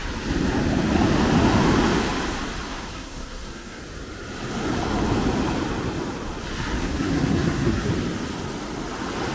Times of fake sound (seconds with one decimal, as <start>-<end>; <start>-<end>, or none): 2.7-3.8; 6.8-7.9